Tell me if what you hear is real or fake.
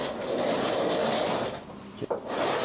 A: real